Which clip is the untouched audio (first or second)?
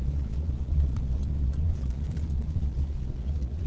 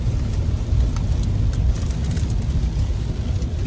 second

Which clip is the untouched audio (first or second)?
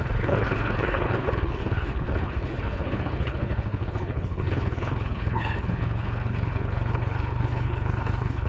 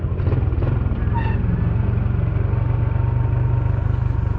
second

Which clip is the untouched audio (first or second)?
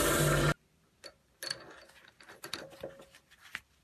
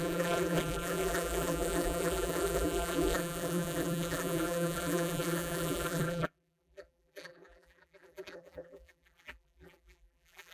first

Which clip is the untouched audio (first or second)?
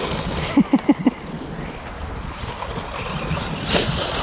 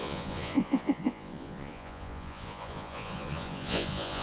first